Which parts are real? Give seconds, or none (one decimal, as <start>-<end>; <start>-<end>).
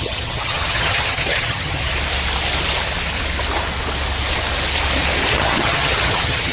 1.9-5.3